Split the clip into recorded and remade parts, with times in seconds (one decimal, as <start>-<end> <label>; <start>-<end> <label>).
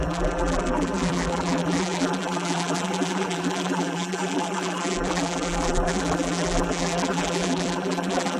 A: 0.0-8.4 remade